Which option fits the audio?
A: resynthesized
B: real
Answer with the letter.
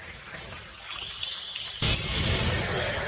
B